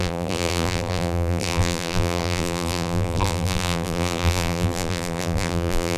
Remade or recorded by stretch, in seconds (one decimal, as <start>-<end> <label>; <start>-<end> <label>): 0.0-6.0 remade